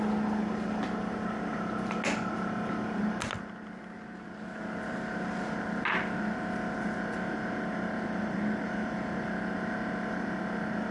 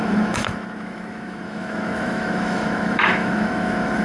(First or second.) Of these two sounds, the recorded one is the first